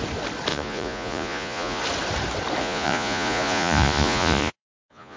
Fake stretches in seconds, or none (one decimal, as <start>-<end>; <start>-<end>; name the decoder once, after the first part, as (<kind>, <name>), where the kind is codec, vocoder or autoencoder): 0.5-1.8 (vocoder, Vocos); 2.6-5.2